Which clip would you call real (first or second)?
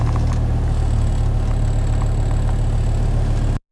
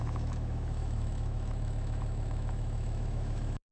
first